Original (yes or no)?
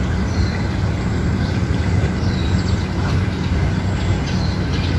yes